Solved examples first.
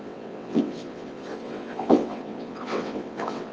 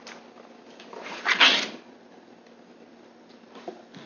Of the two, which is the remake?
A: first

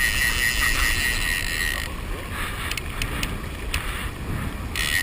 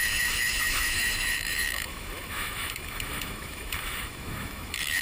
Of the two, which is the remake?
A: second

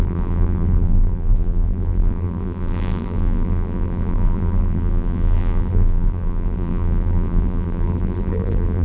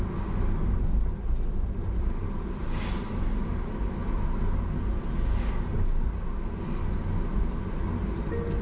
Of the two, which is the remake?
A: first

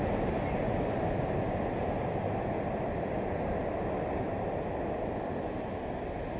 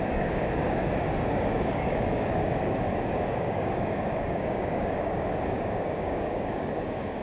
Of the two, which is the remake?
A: second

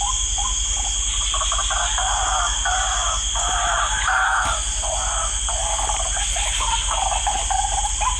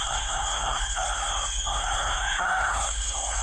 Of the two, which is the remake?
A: second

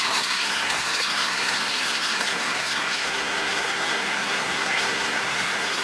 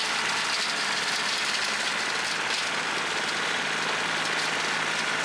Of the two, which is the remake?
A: first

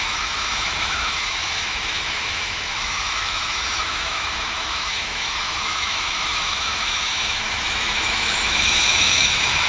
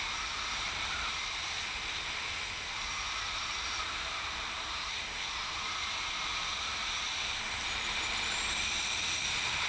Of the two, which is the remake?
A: first